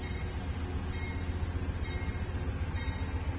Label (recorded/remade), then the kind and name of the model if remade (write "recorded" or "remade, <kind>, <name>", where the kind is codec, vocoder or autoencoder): recorded